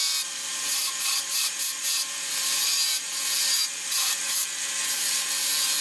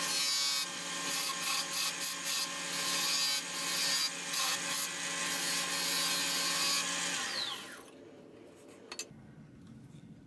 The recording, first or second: second